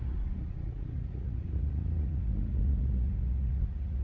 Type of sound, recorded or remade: remade